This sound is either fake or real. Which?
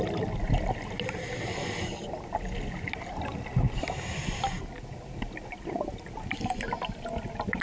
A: real